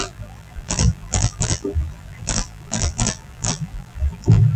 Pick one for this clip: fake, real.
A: fake